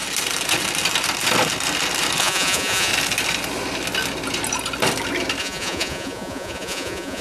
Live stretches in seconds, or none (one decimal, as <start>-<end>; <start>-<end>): 0.0-2.2; 2.9-5.4